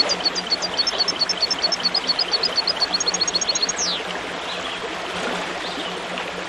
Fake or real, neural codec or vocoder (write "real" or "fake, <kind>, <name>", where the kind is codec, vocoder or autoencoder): real